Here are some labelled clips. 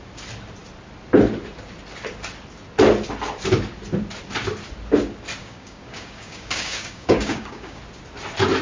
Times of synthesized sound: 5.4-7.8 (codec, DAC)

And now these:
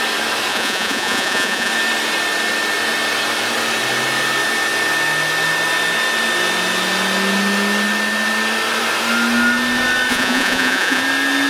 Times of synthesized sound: 0.5-1.7 (vocoder, Vocos); 10.1-11.0

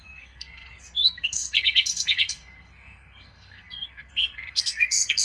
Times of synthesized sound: 0.0-5.2 (codec, SNAC)